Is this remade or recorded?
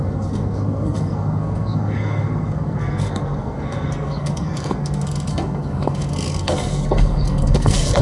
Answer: remade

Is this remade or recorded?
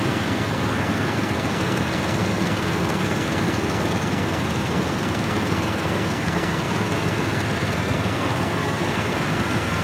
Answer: remade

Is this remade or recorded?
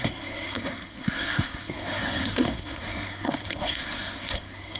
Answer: remade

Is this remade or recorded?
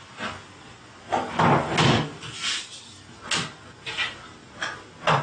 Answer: recorded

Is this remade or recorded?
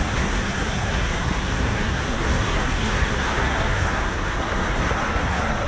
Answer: remade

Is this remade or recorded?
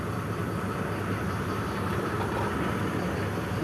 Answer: recorded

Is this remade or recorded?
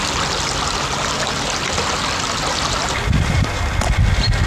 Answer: recorded